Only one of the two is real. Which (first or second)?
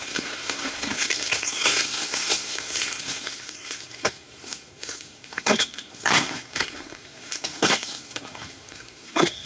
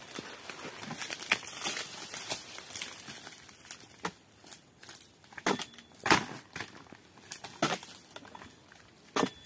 second